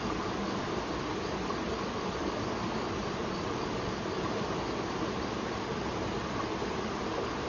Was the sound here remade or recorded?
recorded